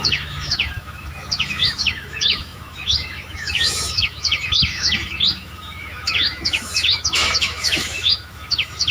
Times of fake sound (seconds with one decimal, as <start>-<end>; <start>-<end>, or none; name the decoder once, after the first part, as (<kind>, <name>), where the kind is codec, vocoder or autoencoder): 0.0-8.9 (autoencoder, DAC-VAE)

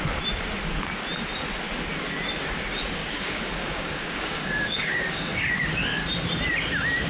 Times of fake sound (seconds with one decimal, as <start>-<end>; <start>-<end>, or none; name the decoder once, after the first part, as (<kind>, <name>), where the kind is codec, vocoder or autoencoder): 3.0-5.6 (codec, DAC)

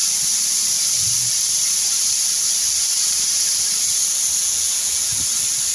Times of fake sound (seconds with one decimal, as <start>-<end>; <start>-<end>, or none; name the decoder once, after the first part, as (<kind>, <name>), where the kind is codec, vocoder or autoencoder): 4.4-5.2 (vocoder, Vocos)

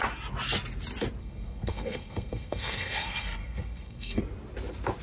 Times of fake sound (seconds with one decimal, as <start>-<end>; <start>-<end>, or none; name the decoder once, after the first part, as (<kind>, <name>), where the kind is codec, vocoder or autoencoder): 1.2-4.2 (codec, SNAC)

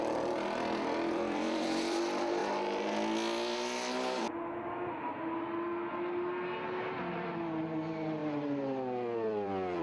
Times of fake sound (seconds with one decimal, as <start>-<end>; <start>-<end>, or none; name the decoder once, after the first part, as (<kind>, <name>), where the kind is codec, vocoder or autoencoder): 0.0-2.4 (vocoder, BigVGAN v2); 7.1-9.8

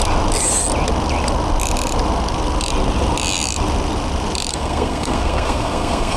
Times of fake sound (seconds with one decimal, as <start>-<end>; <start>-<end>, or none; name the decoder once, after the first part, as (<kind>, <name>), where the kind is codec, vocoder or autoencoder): 4.5-6.2 (codec, SNAC)